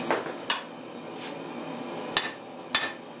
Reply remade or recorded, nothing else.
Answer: recorded